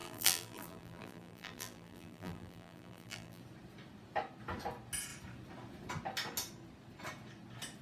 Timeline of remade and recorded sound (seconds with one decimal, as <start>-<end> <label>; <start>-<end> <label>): 0.0-3.4 remade; 3.4-7.8 recorded